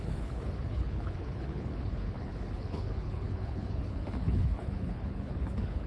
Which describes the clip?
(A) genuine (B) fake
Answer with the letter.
B